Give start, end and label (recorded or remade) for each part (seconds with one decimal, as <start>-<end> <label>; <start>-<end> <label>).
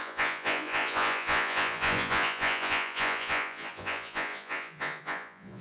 0.0-5.6 remade